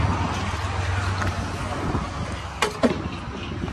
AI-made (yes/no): no